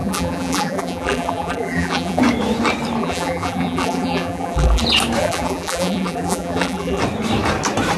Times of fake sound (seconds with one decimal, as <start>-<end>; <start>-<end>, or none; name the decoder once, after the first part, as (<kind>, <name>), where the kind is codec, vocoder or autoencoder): 0.0-2.2 (vocoder, BigVGAN v2); 3.0-4.8; 5.2-7.0